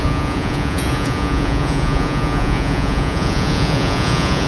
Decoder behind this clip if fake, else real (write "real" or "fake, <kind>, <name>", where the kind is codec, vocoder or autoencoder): fake, vocoder, Vocos